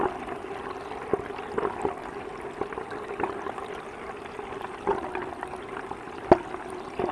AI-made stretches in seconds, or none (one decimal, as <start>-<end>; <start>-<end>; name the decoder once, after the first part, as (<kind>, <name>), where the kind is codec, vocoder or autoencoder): none